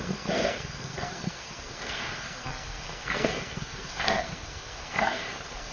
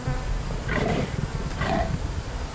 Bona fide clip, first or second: second